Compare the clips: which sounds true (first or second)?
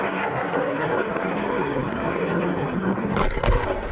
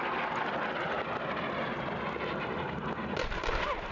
second